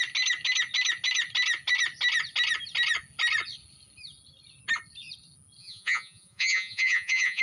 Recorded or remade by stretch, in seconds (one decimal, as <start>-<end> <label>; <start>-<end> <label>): 0.0-5.6 recorded; 5.6-7.4 remade